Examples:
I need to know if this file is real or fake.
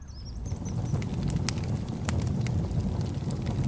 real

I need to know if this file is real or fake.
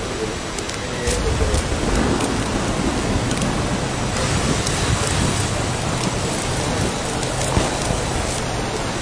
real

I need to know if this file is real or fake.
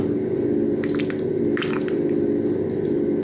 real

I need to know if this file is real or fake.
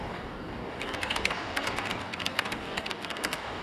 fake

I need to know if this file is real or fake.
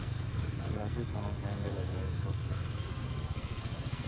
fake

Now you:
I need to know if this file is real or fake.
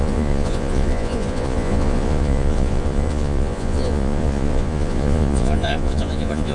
fake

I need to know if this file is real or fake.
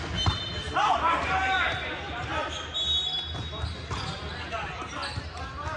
real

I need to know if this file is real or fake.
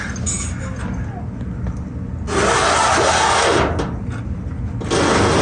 real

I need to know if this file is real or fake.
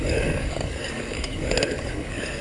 fake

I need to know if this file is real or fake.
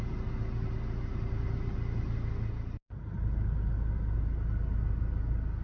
real